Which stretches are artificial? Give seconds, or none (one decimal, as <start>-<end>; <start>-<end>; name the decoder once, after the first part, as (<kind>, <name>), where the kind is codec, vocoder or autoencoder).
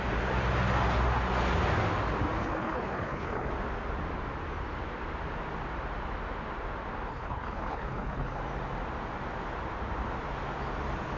2.4-3.5 (codec, HILCodec); 7.1-8.4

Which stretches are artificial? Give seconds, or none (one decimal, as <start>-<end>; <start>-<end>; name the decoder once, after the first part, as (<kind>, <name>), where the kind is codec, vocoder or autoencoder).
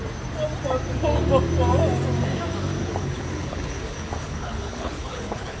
2.8-5.6 (codec, HILCodec)